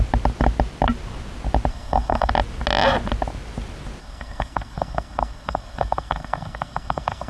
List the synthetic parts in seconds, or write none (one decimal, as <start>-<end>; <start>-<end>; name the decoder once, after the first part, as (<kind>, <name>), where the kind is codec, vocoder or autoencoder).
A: 1.7-2.3 (codec, SNAC); 4.0-7.3